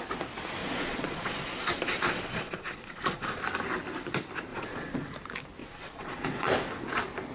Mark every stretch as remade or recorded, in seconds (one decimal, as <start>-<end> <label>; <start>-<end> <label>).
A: 0.0-0.6 recorded; 0.6-3.4 remade; 3.4-4.5 recorded; 4.5-5.1 remade; 5.1-5.6 recorded; 5.6-6.5 remade; 6.5-7.3 recorded

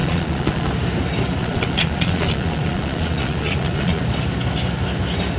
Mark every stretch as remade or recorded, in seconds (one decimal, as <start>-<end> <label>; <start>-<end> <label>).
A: 0.0-0.7 remade; 0.7-1.4 recorded; 1.4-4.0 remade; 4.0-5.4 recorded

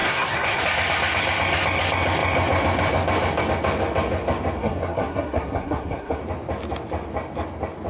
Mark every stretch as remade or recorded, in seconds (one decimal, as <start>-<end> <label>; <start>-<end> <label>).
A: 0.0-0.6 remade; 0.6-4.6 recorded; 4.6-6.2 remade; 6.2-7.9 recorded

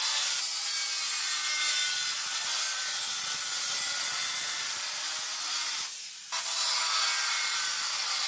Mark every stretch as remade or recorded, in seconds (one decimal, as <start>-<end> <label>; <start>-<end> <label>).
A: 0.0-8.3 recorded

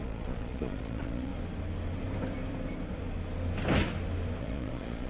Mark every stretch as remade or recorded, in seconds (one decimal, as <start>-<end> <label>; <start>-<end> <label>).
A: 0.0-1.3 remade; 1.3-4.4 recorded; 4.4-5.1 remade